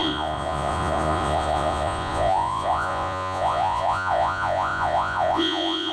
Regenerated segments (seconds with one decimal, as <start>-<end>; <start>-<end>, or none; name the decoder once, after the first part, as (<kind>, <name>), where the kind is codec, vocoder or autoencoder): 0.0-5.9 (vocoder, Vocos)